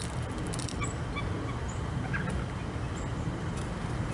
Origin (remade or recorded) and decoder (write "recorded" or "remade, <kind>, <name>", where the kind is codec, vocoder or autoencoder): recorded